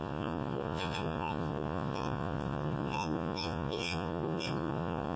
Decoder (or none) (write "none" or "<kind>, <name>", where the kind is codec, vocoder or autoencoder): vocoder, Vocos